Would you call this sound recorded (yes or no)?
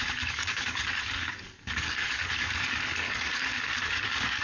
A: no